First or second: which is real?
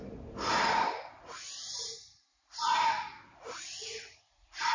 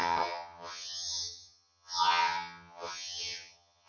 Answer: first